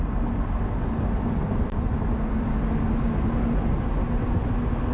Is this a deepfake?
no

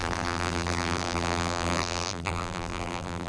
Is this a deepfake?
yes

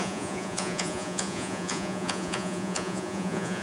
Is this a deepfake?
yes